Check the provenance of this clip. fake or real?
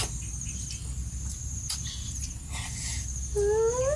real